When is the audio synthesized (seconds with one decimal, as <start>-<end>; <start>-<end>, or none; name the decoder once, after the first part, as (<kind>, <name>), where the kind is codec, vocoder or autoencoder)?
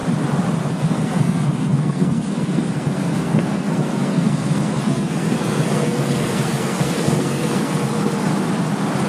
0.7-8.3 (codec, SNAC)